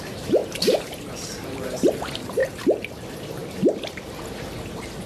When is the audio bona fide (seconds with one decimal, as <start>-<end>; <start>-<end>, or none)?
0.4-1.0; 2.4-2.9; 3.4-5.1